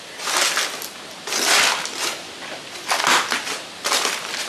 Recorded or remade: recorded